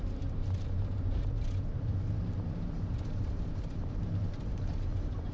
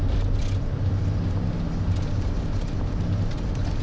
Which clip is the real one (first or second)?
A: second